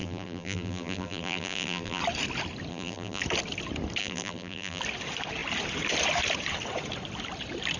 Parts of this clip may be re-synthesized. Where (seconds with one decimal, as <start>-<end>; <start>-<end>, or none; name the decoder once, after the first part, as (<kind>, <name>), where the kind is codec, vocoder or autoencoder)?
0.0-2.0 (vocoder, BigVGAN v2); 2.7-3.2; 4.0-4.8